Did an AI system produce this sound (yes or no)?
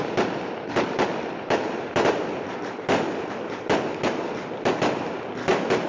no